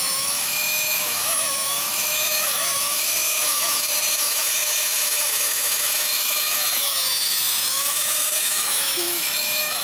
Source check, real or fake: fake